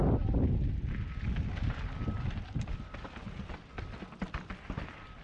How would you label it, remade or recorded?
recorded